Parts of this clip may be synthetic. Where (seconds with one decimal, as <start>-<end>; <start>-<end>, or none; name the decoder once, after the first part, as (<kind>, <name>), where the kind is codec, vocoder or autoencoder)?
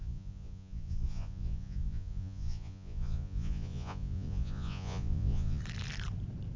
0.0-5.6 (vocoder, Vocos)